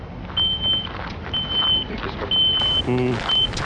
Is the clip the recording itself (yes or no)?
yes